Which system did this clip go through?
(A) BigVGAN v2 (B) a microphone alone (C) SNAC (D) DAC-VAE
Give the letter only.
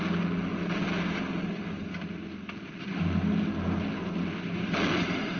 B